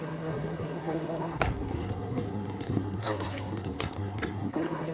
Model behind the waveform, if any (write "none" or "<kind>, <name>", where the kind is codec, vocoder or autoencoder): codec, SNAC